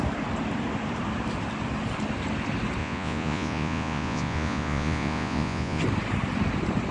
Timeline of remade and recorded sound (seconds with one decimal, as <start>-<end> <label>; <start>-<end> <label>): 0.0-2.8 recorded; 2.8-5.8 remade; 5.8-6.9 recorded